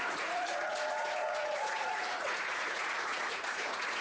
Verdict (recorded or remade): remade